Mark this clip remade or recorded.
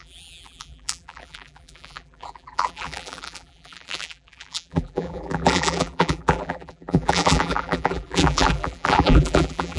remade